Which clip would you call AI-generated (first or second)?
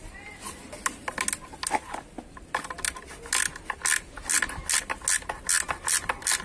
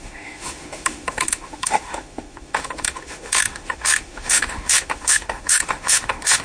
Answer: second